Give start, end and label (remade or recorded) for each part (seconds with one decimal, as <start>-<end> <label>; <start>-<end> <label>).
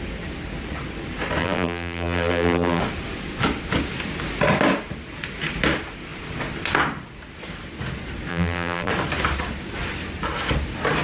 0.0-1.4 recorded; 1.4-2.8 remade; 2.8-8.3 recorded; 8.3-8.9 remade; 8.9-11.0 recorded